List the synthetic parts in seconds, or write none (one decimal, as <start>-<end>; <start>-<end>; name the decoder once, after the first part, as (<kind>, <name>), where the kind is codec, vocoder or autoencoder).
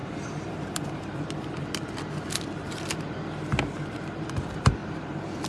0.0-1.6 (vocoder, BigVGAN v2); 4.8-5.5